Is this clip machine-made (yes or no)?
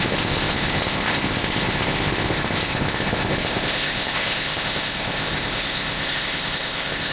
yes